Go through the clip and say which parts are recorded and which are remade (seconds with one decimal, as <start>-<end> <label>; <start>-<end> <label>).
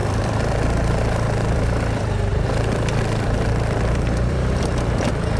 0.0-5.4 remade